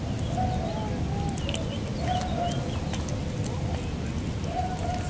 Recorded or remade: recorded